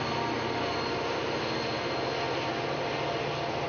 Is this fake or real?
real